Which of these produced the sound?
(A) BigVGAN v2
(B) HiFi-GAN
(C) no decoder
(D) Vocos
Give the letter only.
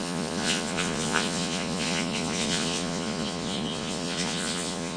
D